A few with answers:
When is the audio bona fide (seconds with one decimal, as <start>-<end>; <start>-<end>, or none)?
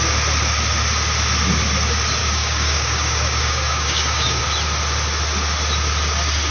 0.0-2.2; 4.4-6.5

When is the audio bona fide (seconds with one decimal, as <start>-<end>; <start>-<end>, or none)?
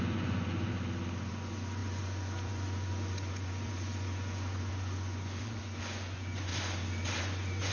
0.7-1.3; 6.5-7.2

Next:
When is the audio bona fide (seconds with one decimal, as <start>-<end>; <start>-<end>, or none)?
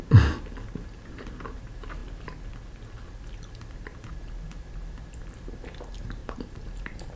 0.0-6.2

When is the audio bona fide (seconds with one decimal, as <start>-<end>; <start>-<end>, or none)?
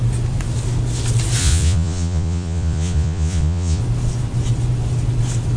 0.0-1.4; 3.8-5.6